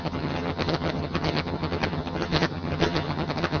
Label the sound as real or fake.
fake